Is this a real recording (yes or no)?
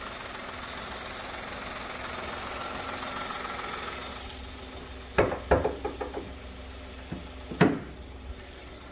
yes